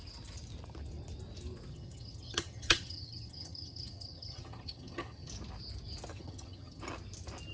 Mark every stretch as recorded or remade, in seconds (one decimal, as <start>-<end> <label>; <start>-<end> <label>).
0.0-1.7 recorded; 1.7-5.3 remade; 5.3-6.1 recorded; 6.1-6.8 remade; 6.8-7.5 recorded